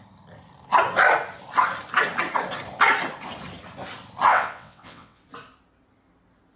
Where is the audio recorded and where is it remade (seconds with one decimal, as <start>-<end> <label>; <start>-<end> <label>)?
0.0-4.3 recorded; 4.3-5.2 remade; 5.2-6.6 recorded